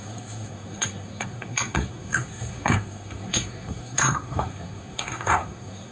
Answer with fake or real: fake